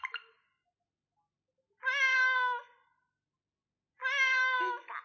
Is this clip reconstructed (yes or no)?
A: no